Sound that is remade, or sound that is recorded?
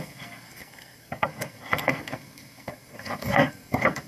remade